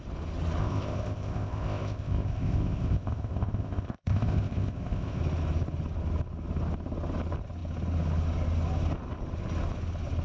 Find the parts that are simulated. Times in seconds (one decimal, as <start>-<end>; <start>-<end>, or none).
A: 0.6-5.2